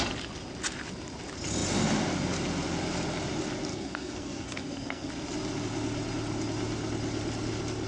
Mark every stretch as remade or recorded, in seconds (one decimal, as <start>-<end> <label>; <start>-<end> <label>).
0.0-3.7 recorded; 3.7-5.1 remade; 5.1-7.9 recorded